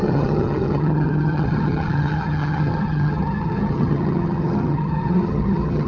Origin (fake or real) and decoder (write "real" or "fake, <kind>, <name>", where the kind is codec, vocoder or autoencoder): fake, vocoder, HiFi-GAN